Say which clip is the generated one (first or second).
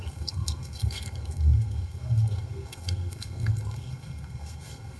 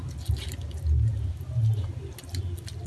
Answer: first